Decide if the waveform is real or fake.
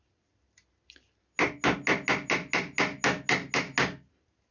real